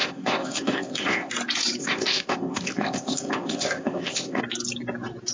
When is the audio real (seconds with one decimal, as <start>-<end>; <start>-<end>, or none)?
1.3-1.8; 4.4-5.3